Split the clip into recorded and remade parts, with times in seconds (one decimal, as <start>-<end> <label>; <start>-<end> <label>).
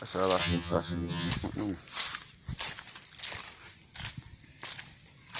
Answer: 0.0-0.4 recorded; 0.4-1.3 remade; 1.3-5.4 recorded